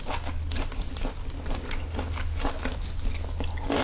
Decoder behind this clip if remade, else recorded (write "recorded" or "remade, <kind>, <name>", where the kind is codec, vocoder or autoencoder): recorded